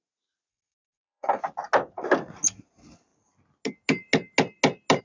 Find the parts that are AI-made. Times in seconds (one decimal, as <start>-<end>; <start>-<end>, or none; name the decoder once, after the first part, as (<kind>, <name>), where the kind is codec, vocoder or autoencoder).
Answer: 0.5-1.4 (codec, SNAC)